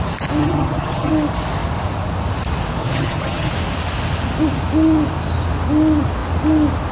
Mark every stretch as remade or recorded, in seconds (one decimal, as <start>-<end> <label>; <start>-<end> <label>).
0.0-0.4 recorded; 0.4-1.1 remade; 1.1-2.8 recorded; 2.8-3.5 remade; 3.5-6.9 recorded